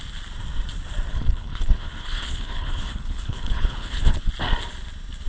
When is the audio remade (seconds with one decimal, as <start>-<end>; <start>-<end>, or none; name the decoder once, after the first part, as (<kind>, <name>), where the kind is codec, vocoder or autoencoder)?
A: 1.1-4.3 (codec, HILCodec)